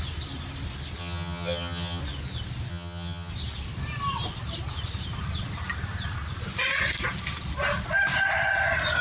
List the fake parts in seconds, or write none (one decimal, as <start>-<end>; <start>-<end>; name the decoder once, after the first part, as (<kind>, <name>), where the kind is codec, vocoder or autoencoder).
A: 1.0-2.0 (vocoder, HiFi-GAN); 2.7-3.3